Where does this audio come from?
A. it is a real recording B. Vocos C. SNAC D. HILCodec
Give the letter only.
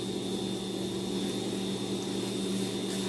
A